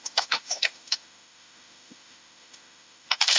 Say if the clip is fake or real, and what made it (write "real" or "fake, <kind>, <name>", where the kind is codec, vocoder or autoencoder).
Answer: fake, autoencoder, DAC-VAE